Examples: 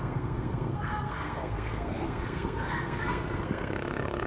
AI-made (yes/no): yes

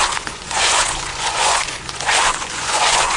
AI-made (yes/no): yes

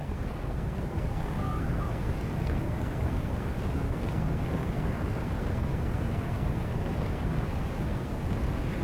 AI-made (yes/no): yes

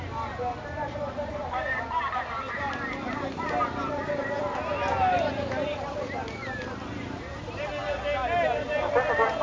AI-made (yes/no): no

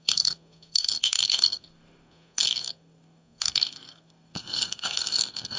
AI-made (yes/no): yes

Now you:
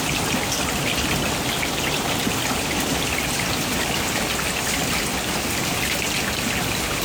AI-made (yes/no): no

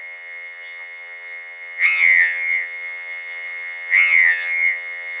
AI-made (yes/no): yes